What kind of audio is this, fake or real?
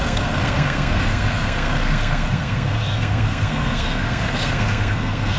fake